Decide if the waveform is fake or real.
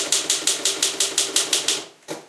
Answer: real